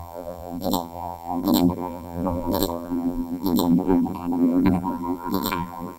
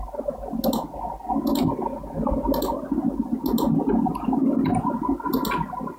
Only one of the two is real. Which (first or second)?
second